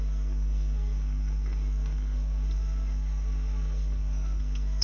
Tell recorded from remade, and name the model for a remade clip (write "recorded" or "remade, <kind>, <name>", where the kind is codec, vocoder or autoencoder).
remade, codec, SNAC